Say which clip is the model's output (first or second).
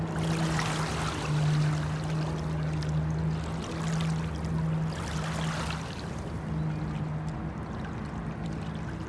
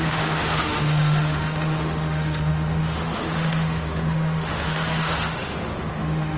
second